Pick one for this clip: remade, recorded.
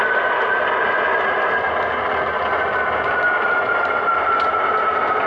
recorded